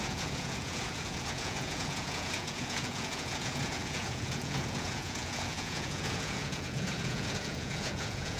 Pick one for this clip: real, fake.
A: fake